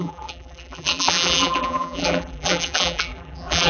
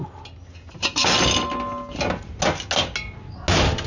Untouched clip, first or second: second